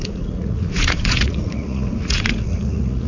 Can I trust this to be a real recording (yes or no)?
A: no